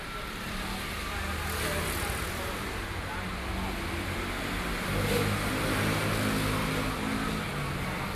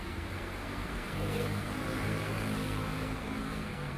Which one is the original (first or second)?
first